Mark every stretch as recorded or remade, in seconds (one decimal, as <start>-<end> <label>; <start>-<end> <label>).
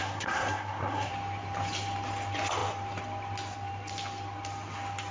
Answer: 0.0-1.1 remade; 1.1-5.1 recorded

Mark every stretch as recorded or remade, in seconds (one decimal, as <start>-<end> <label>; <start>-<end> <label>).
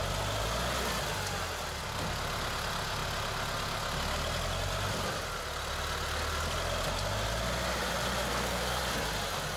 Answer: 0.0-8.3 recorded; 8.3-8.8 remade; 8.8-9.6 recorded